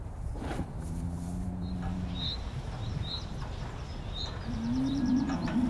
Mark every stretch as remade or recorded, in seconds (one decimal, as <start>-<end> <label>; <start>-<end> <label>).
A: 0.0-2.3 remade; 2.3-4.5 recorded; 4.5-5.7 remade